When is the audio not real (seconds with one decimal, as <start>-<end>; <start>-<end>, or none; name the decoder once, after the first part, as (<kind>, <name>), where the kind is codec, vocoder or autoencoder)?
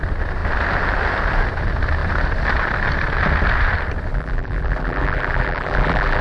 4.1-6.2 (vocoder, BigVGAN v2)